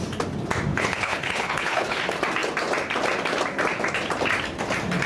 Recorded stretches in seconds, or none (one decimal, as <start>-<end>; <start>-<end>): 0.0-0.7; 2.0-5.1